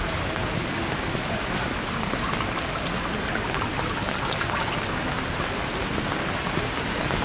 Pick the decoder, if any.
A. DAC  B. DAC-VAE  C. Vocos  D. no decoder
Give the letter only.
D